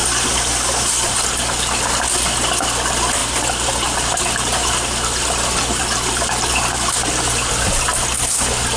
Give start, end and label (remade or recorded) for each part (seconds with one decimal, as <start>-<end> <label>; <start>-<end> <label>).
0.0-8.8 recorded